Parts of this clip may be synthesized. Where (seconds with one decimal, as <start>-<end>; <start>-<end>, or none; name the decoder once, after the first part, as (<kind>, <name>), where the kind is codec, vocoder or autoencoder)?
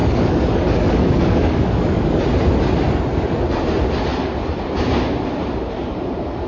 0.0-2.2 (codec, DAC)